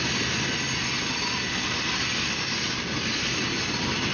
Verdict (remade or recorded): recorded